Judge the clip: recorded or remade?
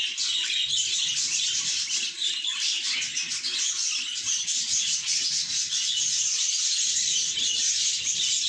recorded